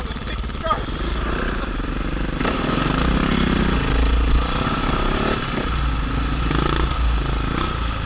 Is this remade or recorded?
recorded